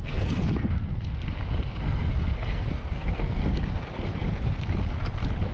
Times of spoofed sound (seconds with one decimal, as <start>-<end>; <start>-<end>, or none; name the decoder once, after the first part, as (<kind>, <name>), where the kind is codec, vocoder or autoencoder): 0.0-0.9 (codec, SNAC); 1.8-3.4